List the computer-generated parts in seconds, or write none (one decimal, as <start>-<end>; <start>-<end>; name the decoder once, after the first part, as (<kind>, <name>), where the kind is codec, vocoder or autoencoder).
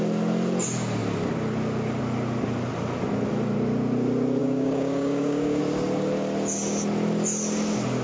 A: 4.4-5.6 (codec, DAC)